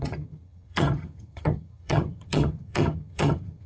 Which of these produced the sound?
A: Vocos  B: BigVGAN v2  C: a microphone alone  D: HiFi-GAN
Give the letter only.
D